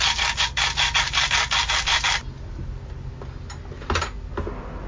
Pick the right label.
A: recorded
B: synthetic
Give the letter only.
A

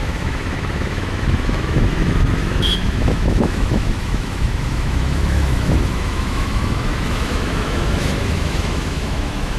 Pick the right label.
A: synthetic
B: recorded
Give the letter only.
A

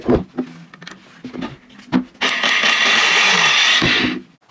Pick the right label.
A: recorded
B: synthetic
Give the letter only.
A